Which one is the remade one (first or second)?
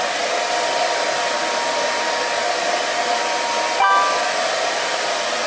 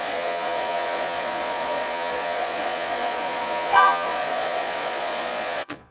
second